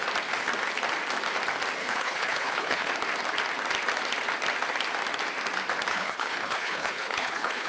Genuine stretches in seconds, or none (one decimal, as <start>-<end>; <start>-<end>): 0.0-1.8; 2.9-5.9